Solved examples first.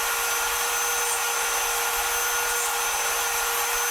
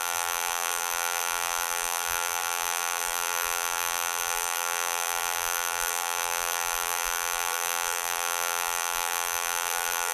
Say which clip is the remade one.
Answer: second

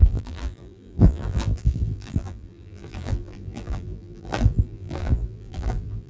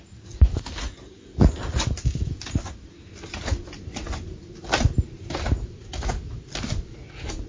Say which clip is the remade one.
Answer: first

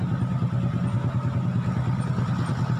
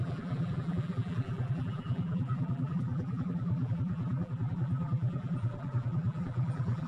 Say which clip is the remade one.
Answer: second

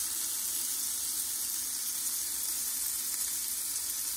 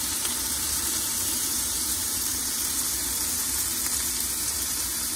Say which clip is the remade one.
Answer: second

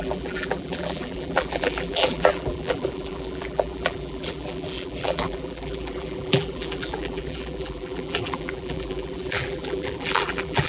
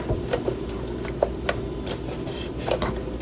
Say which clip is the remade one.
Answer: first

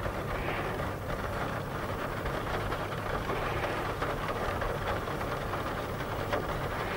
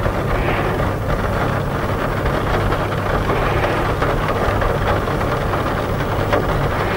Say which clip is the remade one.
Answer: first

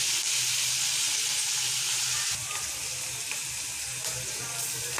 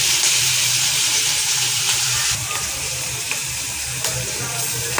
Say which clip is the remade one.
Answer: second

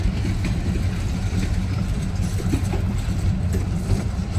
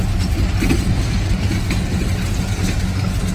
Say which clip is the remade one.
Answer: first